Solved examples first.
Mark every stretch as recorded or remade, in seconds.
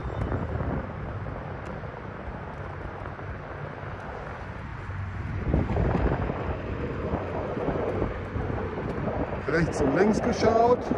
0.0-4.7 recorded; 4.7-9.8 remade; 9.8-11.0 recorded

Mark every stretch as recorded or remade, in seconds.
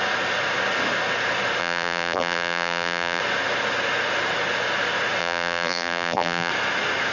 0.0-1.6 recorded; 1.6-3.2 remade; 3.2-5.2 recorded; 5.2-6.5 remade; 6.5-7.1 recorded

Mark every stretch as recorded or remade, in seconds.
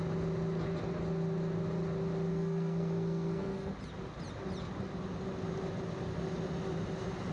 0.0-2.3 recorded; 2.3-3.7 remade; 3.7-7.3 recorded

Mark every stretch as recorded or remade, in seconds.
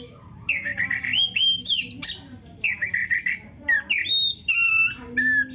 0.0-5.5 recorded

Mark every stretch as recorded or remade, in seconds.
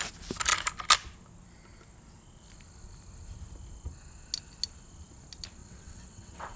0.0-5.6 recorded; 5.6-6.6 remade